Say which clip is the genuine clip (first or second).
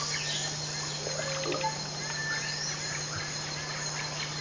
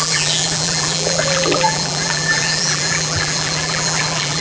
first